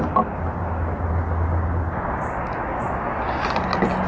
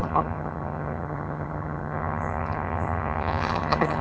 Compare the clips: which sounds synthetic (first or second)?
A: second